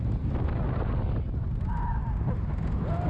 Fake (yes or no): no